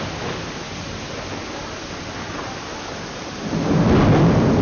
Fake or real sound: real